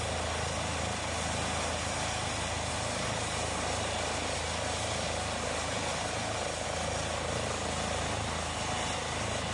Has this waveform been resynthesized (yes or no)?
no